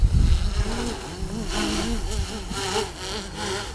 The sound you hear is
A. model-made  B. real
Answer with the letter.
B